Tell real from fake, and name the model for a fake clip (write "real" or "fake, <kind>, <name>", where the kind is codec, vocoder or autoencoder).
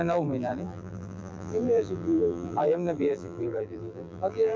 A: fake, vocoder, BigVGAN v2